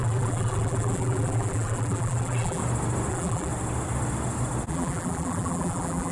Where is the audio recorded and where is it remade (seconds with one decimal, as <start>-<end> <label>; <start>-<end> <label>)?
0.0-2.6 remade; 2.6-3.1 recorded; 3.1-3.5 remade; 3.5-4.7 recorded; 4.7-6.1 remade